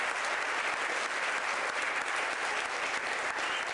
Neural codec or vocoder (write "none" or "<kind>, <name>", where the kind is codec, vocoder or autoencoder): none